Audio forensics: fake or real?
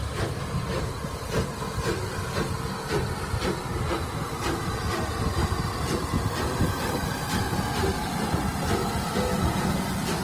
real